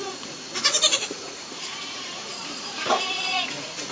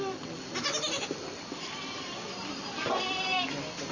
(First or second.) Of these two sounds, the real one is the second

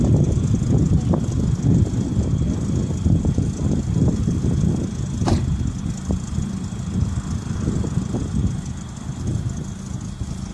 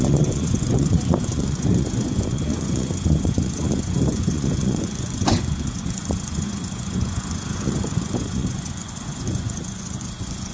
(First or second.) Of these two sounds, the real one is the first